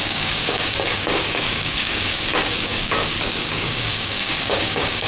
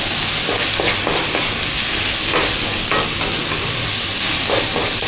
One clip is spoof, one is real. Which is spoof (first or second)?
first